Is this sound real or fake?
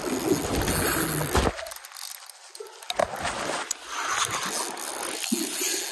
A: real